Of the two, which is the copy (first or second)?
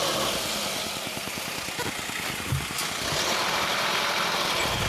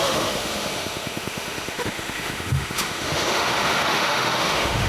second